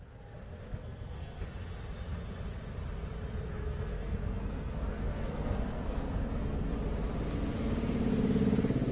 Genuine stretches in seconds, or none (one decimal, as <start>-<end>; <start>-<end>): 0.0-0.7; 1.4-3.5; 6.7-8.9